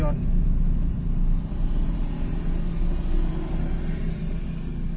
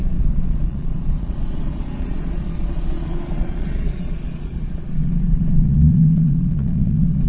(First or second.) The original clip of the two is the first